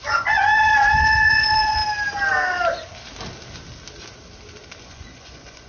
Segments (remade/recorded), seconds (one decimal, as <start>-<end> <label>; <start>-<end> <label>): 0.0-1.8 remade; 1.8-4.8 recorded; 4.8-5.7 remade